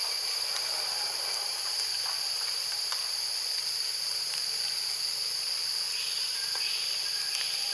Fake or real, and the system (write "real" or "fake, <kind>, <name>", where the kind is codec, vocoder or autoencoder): real